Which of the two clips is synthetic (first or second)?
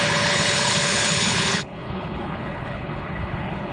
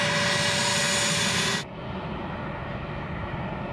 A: first